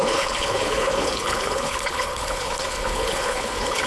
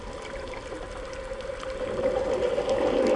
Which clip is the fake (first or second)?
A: first